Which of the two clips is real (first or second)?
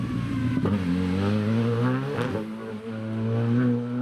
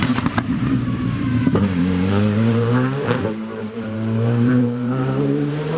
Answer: first